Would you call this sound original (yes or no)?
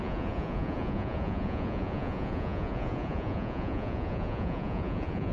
no